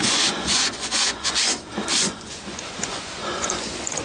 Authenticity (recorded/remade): remade